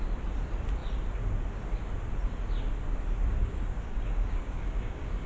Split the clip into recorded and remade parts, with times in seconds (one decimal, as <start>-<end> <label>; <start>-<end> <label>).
0.0-3.4 recorded; 3.4-5.3 remade